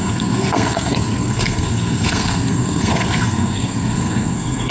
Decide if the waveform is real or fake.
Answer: fake